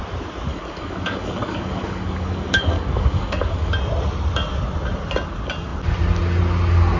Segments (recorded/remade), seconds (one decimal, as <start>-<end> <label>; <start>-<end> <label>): 0.0-0.5 recorded; 0.5-3.7 remade; 3.7-7.0 recorded